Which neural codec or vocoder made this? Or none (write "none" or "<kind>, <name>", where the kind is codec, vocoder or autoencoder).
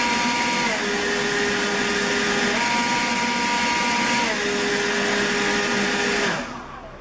none